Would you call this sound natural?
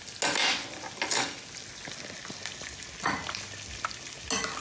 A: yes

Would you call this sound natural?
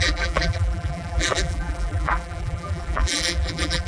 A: no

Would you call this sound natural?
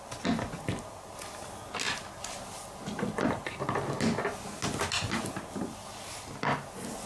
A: yes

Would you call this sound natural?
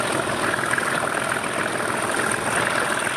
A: no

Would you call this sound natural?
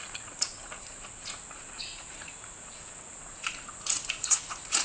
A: no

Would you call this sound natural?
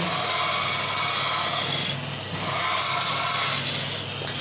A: yes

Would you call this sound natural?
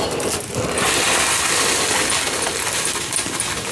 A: yes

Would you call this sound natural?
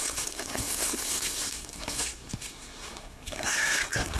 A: no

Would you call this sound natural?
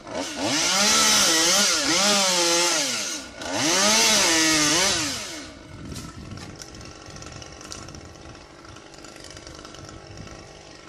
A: yes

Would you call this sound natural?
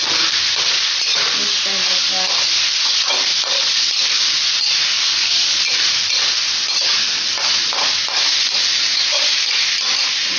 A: yes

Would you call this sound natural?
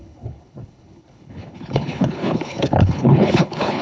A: no